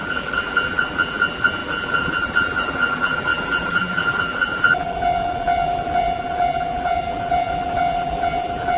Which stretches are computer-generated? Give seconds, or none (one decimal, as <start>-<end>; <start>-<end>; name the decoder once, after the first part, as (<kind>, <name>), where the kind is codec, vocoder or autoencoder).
0.0-8.8 (vocoder, BigVGAN v2)